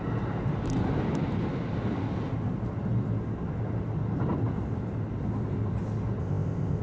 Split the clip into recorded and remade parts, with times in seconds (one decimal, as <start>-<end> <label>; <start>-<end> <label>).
0.0-6.2 recorded; 6.2-6.8 remade